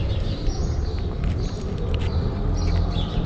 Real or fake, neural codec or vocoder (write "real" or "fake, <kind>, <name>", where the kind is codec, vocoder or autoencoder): real